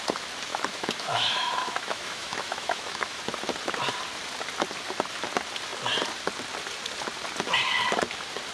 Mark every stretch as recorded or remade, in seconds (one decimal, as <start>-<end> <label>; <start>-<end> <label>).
0.0-0.5 recorded; 0.5-3.2 remade; 3.2-8.5 recorded